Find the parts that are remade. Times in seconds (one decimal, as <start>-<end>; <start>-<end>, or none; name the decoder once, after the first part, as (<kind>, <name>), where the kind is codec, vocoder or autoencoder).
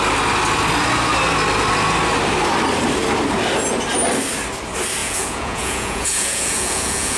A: 5.0-7.2 (vocoder, Vocos)